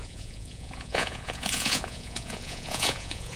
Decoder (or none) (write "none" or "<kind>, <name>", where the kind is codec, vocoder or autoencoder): vocoder, Vocos